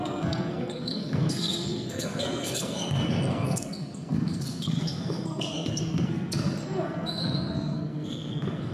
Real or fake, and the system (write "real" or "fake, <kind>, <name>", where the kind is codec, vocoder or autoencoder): fake, codec, SNAC